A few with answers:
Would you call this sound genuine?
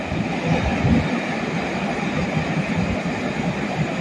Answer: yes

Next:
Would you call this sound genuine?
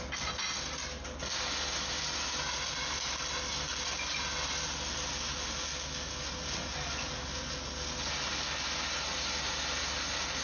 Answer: yes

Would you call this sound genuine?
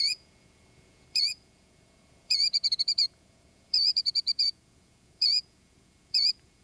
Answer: no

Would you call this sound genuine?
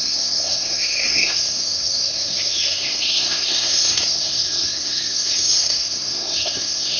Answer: no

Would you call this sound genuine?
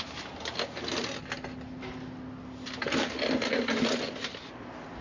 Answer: yes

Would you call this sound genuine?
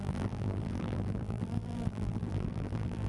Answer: no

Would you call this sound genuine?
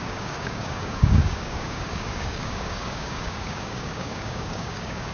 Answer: no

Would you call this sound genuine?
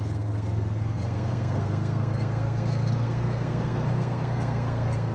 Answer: no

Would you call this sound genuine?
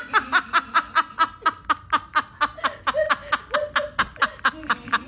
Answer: yes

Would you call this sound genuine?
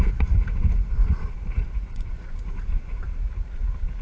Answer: no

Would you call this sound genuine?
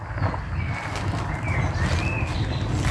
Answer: yes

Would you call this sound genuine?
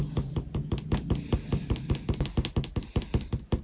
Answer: yes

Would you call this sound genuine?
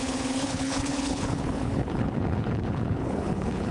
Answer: no